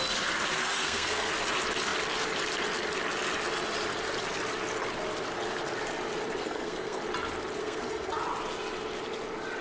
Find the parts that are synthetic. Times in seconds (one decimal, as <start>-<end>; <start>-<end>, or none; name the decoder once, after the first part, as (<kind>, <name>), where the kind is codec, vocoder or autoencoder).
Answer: 0.6-1.3 (codec, SNAC); 6.4-7.0; 7.6-8.2